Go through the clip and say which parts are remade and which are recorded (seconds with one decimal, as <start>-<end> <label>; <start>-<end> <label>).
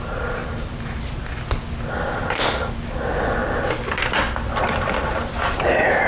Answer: 0.0-0.4 recorded; 0.4-1.0 remade; 1.0-6.1 recorded